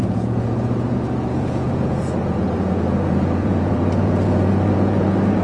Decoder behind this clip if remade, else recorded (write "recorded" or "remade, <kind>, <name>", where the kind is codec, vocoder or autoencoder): remade, vocoder, Vocos